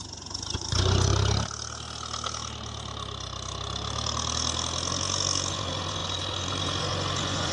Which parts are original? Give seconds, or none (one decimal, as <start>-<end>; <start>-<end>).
1.1-5.5